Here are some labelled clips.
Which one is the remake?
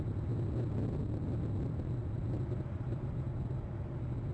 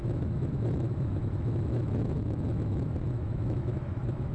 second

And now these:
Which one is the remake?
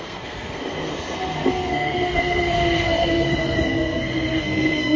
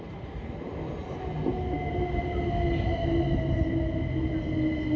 first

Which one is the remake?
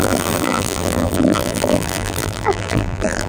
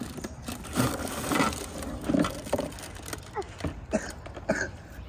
first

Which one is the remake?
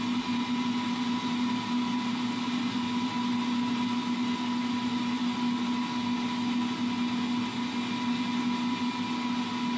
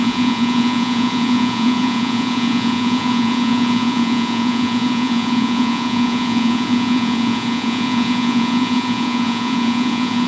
second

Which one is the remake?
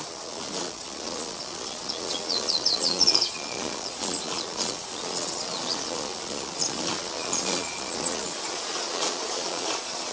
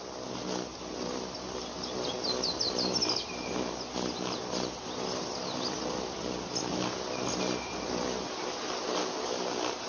first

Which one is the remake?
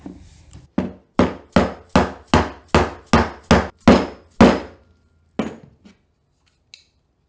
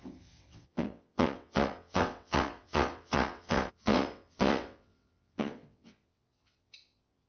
second